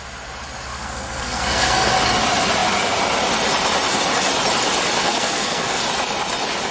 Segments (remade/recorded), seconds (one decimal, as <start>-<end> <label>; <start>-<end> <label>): 0.0-0.7 recorded; 0.7-1.9 remade; 1.9-5.0 recorded; 5.0-5.8 remade; 5.8-6.7 recorded